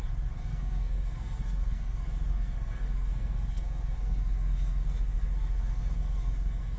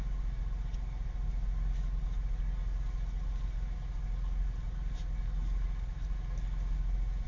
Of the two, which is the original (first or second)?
second